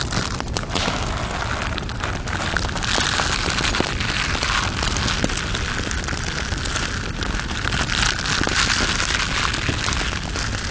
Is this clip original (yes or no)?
yes